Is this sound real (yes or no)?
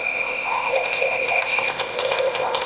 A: no